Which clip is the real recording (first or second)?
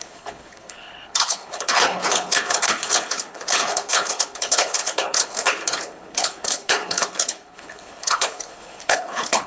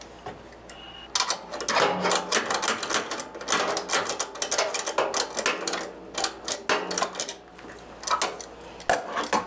second